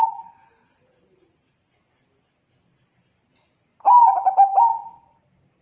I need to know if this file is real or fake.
real